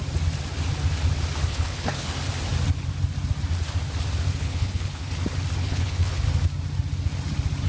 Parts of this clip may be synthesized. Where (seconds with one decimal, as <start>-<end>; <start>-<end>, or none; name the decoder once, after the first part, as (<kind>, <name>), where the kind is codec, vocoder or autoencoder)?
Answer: 1.5-2.1 (codec, HILCodec); 4.3-5.1; 5.6-6.2